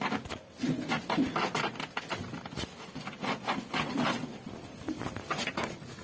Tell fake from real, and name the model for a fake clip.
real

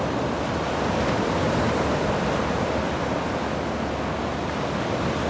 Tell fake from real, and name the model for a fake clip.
real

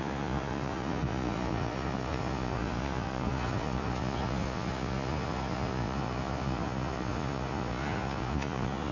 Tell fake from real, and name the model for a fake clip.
fake, vocoder, Vocos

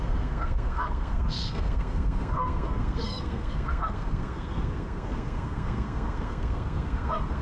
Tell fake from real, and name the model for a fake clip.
fake, codec, SNAC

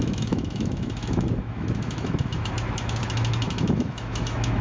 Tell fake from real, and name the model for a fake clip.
fake, autoencoder, DAC-VAE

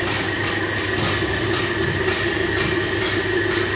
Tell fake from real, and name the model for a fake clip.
real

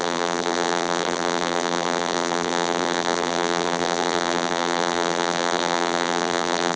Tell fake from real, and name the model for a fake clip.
fake, vocoder, BigVGAN v2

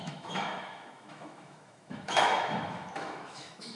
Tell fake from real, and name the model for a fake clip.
fake, autoencoder, DAC-VAE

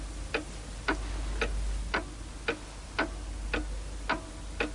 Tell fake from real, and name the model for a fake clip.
real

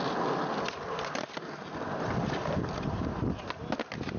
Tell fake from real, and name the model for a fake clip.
real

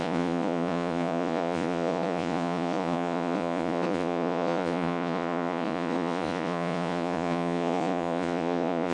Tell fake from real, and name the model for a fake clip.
fake, vocoder, Vocos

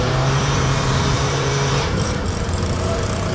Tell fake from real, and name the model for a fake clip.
fake, vocoder, BigVGAN v2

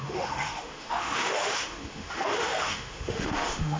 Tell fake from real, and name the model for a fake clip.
fake, autoencoder, DAC-VAE